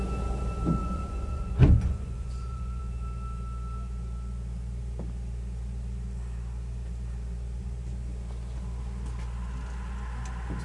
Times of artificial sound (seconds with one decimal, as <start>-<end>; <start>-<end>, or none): 0.8-2.8